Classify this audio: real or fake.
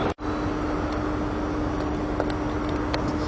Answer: real